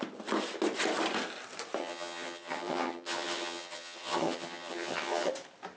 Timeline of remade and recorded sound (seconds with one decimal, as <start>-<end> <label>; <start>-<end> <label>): 0.0-1.8 recorded; 1.8-5.3 remade; 5.3-5.8 recorded